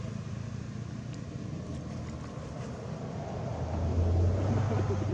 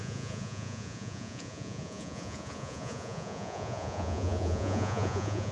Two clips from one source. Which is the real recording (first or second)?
first